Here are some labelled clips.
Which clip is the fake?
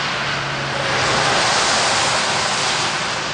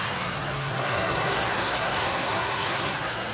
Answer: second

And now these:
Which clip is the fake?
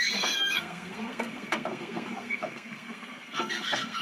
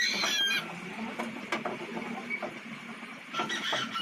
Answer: first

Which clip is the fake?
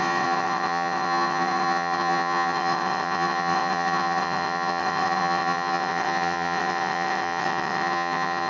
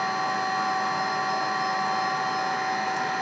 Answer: first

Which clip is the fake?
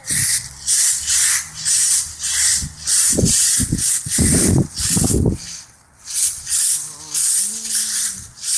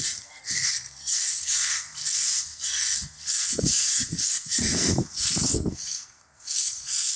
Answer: second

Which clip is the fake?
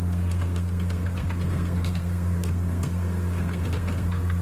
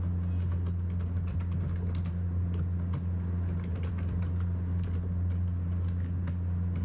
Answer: first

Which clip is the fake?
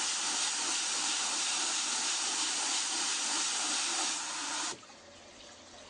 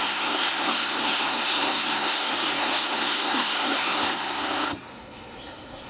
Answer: second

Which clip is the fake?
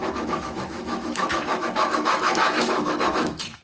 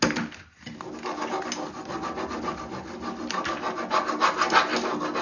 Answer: first